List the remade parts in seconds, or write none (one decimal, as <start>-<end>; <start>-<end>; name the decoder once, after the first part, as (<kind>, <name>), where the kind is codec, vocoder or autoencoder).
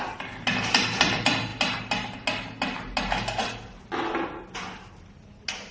none